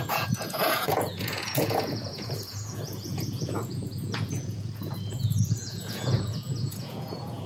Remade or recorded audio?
remade